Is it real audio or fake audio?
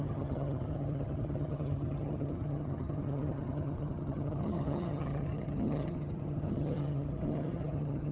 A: fake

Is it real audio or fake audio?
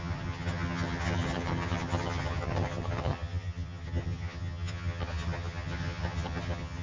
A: fake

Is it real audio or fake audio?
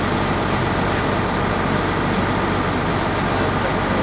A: real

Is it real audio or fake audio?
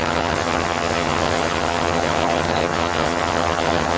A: fake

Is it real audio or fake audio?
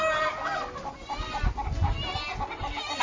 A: real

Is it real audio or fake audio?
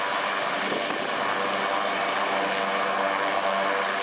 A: real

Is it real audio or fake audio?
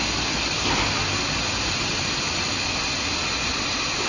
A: real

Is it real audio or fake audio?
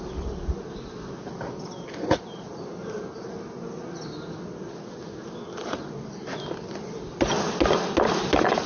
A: real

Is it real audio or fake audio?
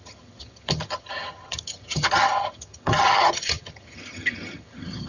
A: fake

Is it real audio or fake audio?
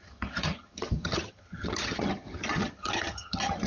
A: fake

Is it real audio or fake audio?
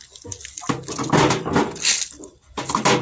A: real